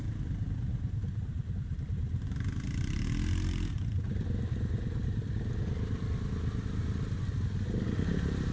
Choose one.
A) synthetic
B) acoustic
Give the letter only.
B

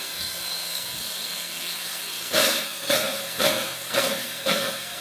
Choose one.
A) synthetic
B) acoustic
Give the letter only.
A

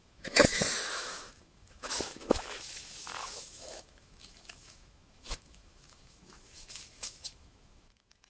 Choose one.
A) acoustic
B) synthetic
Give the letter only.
B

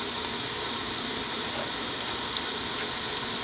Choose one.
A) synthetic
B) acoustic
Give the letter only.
B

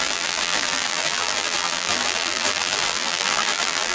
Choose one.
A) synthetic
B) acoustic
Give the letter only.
A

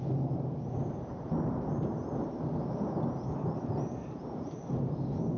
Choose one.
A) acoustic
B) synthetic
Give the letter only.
A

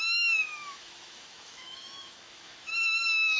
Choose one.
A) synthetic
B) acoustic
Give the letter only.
A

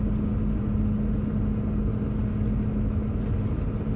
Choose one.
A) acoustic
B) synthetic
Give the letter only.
A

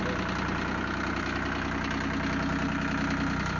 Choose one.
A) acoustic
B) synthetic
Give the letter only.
A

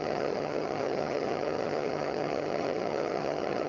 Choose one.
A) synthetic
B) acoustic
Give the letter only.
A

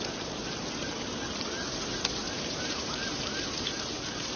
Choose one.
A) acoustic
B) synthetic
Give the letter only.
B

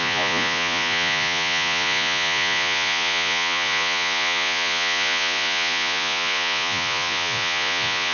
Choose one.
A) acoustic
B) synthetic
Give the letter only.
B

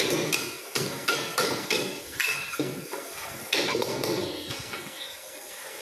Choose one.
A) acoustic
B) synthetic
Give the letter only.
B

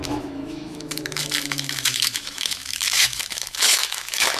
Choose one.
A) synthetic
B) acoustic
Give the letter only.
A